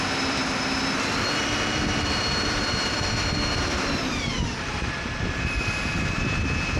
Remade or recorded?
remade